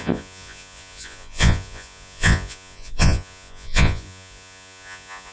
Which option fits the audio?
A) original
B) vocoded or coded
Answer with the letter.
B